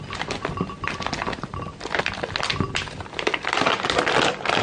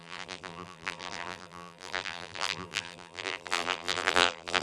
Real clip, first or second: first